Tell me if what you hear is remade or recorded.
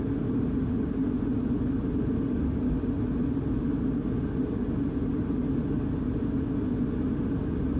recorded